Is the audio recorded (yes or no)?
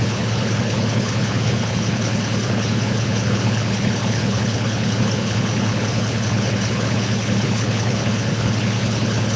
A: no